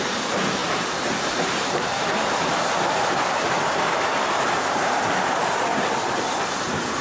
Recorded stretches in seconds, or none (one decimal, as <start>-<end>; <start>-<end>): 5.7-6.5